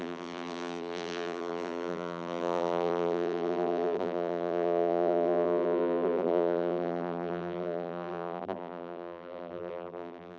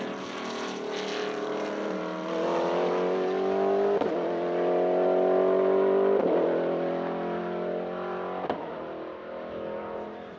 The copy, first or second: first